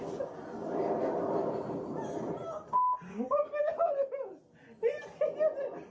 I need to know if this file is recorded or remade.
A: recorded